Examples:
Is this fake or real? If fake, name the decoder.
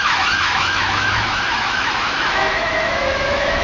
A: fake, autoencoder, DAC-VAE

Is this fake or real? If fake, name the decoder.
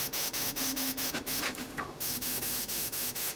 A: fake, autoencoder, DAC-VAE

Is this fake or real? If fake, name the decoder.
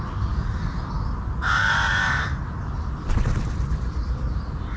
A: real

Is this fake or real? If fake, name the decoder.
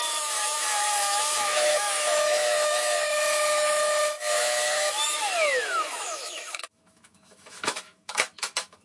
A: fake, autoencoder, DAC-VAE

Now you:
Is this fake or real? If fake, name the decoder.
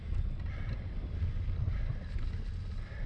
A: real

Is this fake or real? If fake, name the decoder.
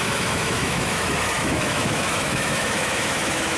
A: fake, autoencoder, DAC-VAE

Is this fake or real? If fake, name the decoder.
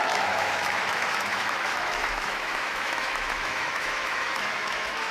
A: fake, autoencoder, DAC-VAE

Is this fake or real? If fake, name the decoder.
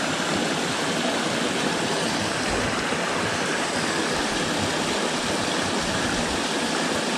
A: real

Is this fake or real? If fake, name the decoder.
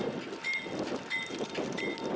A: real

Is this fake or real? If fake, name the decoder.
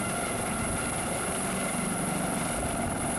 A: real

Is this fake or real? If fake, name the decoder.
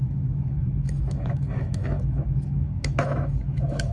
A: fake, autoencoder, DAC-VAE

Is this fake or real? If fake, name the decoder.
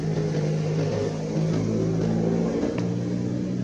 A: real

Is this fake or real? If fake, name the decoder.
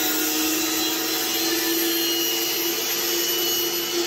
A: real